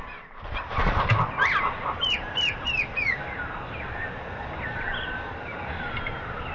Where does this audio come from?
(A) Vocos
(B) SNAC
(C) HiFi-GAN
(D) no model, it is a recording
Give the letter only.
D